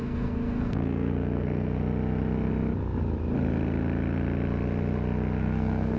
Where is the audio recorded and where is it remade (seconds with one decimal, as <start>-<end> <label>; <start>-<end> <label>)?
0.0-1.8 remade; 1.8-5.4 recorded; 5.4-6.0 remade